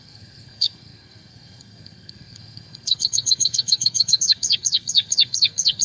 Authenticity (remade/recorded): remade